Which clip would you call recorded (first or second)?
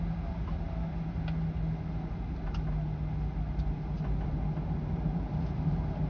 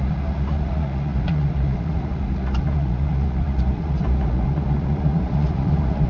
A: first